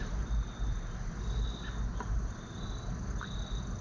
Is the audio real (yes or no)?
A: yes